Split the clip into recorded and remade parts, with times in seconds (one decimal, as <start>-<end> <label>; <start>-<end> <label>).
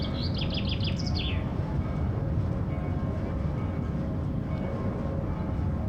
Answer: 0.0-1.5 recorded; 1.5-2.5 remade; 2.5-5.9 recorded